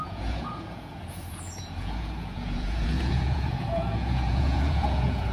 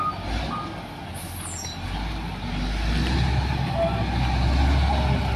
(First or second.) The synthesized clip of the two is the first